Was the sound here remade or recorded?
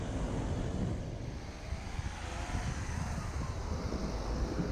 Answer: recorded